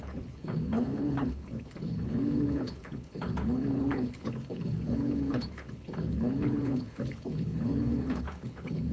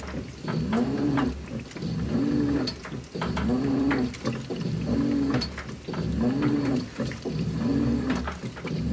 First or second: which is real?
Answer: second